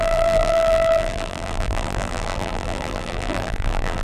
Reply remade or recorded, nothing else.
remade